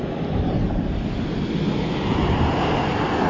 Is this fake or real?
real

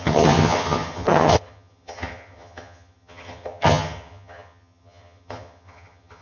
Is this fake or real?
fake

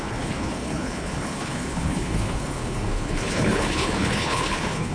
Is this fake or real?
fake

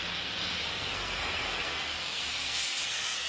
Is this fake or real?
fake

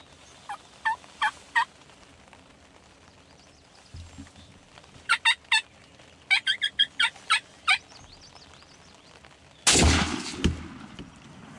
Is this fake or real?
real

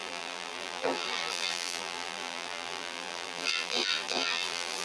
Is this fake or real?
fake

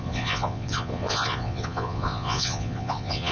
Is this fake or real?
fake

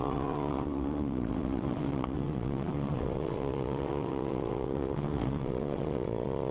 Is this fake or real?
fake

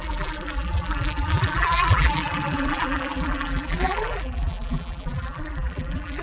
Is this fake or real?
fake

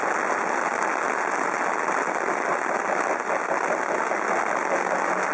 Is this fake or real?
real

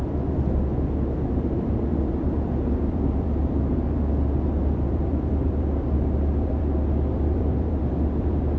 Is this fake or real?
fake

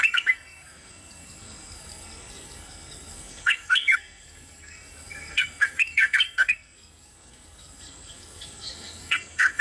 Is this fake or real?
fake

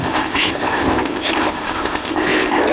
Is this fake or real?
fake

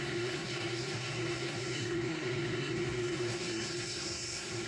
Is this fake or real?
fake